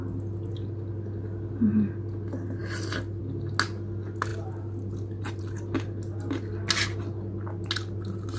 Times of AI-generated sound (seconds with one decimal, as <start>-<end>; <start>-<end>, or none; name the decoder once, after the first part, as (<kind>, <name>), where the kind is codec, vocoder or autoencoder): none